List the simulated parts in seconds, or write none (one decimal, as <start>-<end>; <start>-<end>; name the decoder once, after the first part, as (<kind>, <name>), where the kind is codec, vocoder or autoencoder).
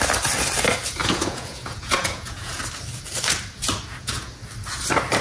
1.0-2.6 (vocoder, Vocos); 3.9-4.4